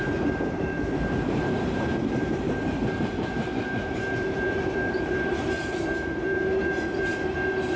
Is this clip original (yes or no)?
no